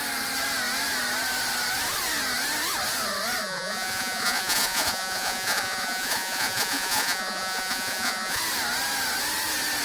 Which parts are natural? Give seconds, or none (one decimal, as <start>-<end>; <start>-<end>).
0.0-3.4; 8.4-9.8